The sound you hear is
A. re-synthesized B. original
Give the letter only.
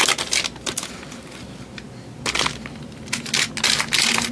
B